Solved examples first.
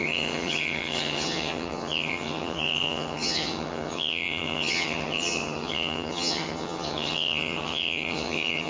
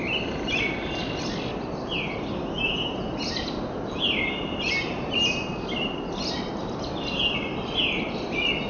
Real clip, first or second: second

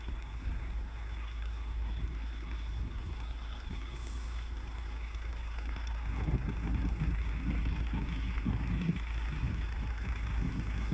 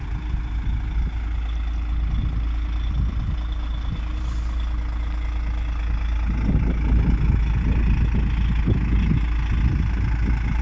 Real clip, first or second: second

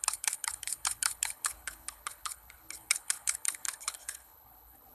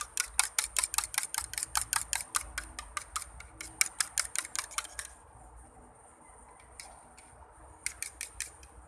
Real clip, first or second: second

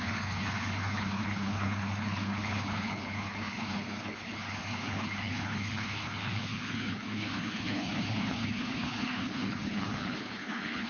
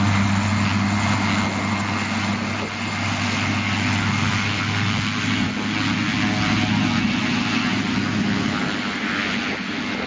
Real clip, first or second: second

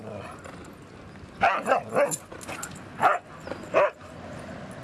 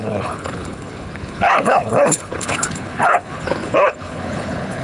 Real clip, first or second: first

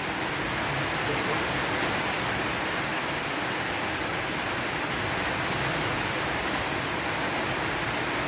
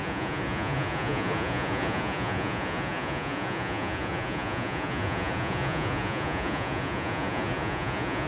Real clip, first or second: first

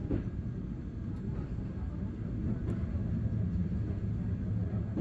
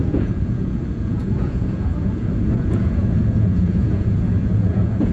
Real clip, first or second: first